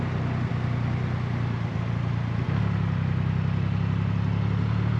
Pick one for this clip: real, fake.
real